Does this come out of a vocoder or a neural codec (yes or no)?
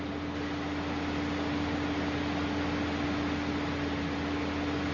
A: no